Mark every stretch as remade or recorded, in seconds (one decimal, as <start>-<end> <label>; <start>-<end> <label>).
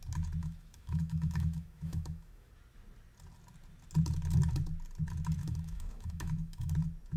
0.0-0.4 recorded; 0.4-2.5 remade; 2.5-5.4 recorded; 5.4-6.7 remade; 6.7-7.2 recorded